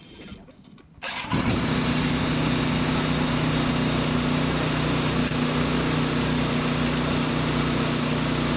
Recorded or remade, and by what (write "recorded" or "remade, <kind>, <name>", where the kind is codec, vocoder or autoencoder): recorded